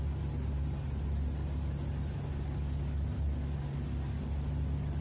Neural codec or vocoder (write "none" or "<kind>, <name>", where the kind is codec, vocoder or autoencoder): none